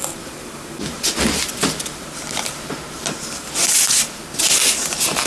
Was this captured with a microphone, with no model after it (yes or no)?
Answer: yes